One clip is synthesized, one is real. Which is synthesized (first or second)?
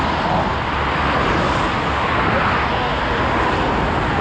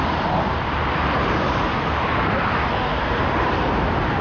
second